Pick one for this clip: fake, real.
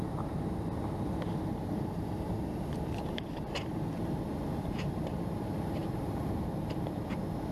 fake